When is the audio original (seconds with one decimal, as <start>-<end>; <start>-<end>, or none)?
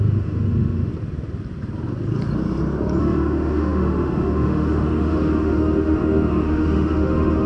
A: 0.9-3.0